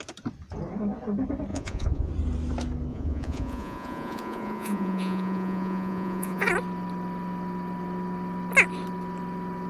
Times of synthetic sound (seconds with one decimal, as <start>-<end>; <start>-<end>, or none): 1.5-2.1; 2.9-6.5